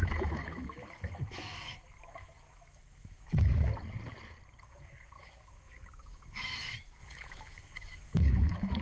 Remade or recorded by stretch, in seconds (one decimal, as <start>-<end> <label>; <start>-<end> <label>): 0.0-3.7 remade; 3.7-4.6 recorded; 4.6-8.8 remade